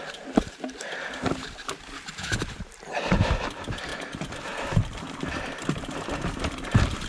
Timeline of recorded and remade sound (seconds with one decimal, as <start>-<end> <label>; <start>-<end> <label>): 0.0-3.9 remade; 3.9-5.4 recorded; 5.4-7.1 remade